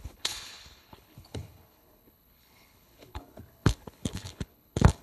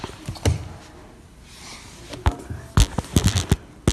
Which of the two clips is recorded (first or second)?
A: second